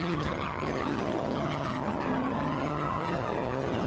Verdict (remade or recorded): remade